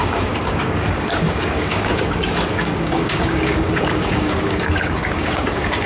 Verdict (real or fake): fake